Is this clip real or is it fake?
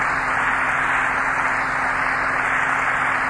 real